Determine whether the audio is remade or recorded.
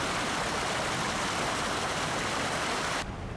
remade